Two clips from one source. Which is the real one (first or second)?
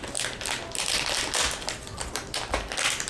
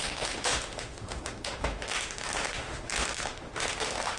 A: first